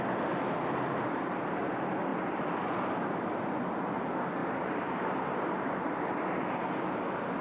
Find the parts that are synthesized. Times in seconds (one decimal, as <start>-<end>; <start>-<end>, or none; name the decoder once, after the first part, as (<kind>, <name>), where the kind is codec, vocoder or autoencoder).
0.9-1.7 (vocoder, BigVGAN v2); 4.4-6.6